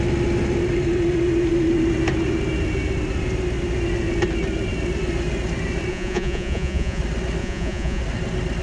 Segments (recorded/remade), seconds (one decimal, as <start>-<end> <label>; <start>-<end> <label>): 0.0-5.9 recorded; 5.9-7.0 remade; 7.0-7.4 recorded; 7.4-8.0 remade; 8.0-8.6 recorded